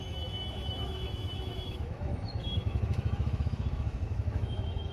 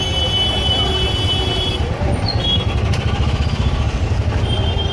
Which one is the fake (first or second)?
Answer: first